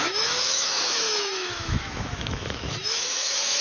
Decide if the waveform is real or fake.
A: fake